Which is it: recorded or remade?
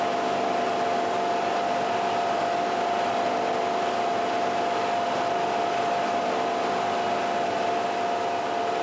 recorded